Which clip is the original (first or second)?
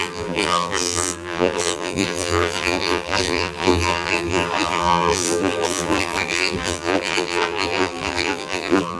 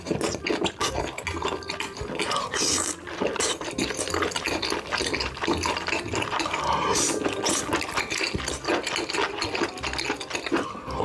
second